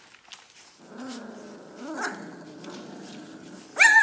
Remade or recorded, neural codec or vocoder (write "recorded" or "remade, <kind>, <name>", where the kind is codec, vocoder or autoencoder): recorded